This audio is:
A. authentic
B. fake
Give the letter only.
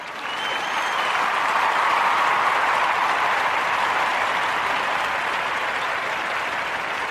B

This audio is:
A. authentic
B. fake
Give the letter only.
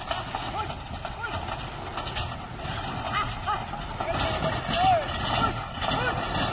A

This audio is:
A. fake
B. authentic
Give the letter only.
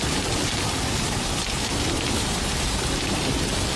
A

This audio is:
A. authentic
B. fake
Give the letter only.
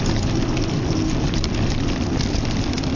B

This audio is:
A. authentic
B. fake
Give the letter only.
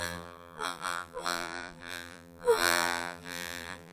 B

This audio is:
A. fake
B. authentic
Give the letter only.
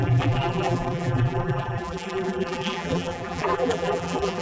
A